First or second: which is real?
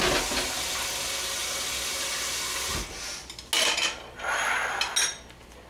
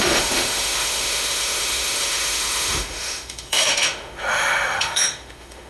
first